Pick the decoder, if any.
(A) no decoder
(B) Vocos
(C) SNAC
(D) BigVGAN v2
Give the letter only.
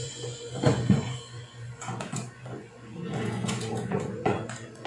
B